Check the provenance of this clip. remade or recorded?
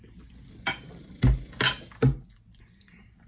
recorded